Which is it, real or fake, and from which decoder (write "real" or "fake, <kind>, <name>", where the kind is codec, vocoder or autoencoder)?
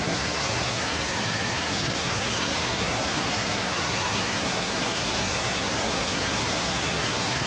fake, codec, SNAC